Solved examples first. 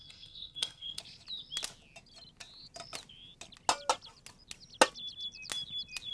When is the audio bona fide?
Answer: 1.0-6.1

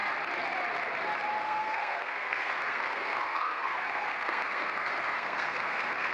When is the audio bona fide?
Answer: 0.0-1.4

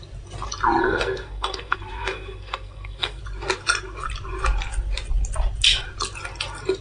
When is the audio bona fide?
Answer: 0.0-0.8; 3.2-6.8

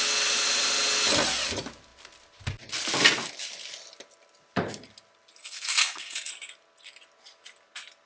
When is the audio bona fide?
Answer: 0.0-5.4; 6.3-8.1

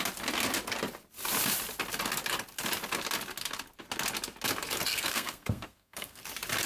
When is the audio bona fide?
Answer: 0.0-4.9; 6.2-6.7

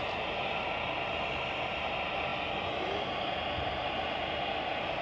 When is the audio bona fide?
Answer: 0.0-5.0